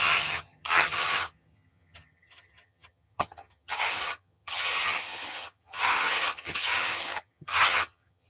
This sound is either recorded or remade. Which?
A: remade